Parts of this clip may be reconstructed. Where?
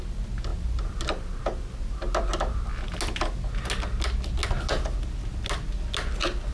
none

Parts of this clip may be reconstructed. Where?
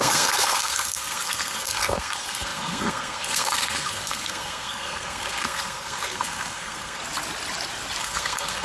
0.0-7.0 (codec, SNAC); 8.0-8.6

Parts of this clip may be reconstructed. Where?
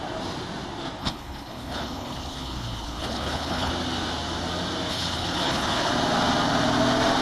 1.0-3.7 (codec, HILCodec); 4.9-5.9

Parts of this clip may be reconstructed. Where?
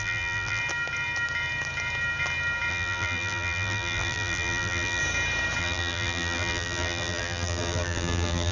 0.0-0.6 (vocoder, BigVGAN v2); 2.7-5.0; 5.6-8.5